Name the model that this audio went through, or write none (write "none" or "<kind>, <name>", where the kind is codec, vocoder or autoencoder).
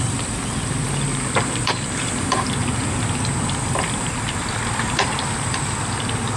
vocoder, BigVGAN v2